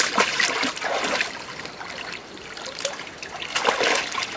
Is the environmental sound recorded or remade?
recorded